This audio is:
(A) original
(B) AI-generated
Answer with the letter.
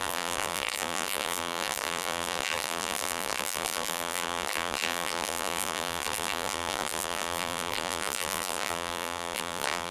B